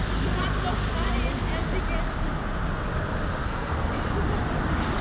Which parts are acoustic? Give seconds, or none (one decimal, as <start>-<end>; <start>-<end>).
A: 0.0-3.4; 3.9-5.0